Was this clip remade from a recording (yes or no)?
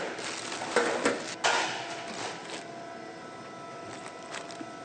no